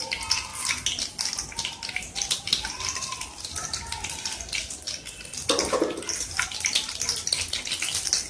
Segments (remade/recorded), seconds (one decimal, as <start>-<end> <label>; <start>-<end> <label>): 0.0-8.3 recorded